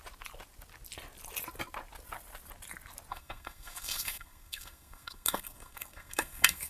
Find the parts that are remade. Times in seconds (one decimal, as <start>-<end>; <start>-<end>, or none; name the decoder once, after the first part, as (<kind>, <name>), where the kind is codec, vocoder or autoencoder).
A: 3.1-6.7 (codec, SNAC)